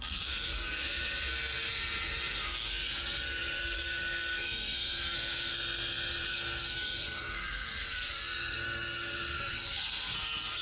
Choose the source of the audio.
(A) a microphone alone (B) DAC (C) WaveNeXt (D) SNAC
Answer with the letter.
D